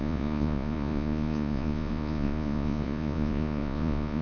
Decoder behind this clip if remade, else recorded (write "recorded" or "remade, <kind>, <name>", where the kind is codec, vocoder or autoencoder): remade, vocoder, Vocos